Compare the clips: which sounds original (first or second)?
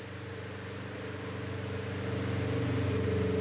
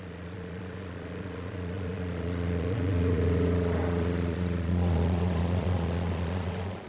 first